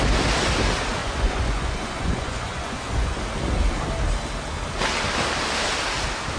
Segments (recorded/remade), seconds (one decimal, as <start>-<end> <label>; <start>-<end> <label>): 0.0-1.0 recorded; 1.0-3.2 remade; 3.2-6.4 recorded